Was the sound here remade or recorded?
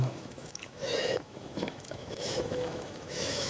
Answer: remade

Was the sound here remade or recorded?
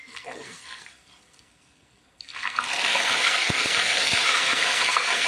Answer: remade